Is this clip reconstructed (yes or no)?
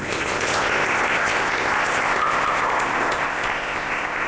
yes